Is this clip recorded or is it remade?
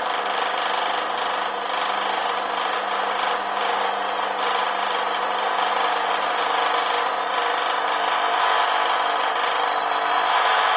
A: recorded